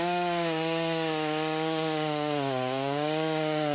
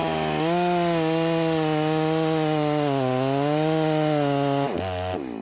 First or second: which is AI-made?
first